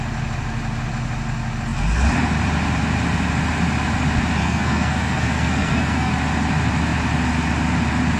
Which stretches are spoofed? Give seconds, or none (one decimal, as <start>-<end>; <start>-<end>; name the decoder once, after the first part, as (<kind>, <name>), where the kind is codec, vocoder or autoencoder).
4.4-6.1 (codec, SNAC)